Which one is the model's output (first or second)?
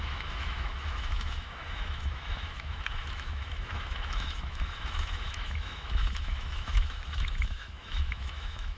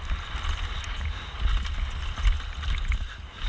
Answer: first